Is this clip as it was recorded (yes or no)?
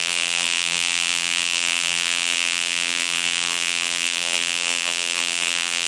no